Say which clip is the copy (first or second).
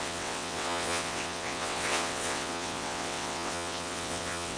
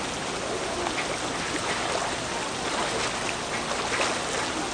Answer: first